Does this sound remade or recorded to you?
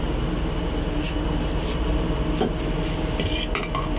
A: recorded